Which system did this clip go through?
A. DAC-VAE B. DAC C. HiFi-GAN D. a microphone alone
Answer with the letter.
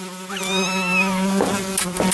D